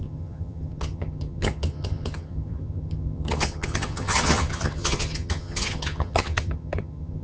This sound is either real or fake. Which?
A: fake